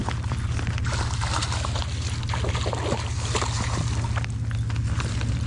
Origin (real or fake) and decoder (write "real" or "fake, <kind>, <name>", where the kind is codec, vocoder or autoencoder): real